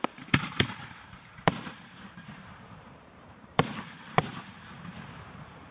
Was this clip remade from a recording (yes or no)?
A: yes